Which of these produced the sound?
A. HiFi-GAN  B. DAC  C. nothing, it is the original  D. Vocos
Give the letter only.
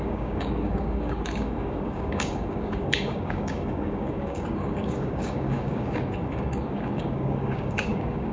B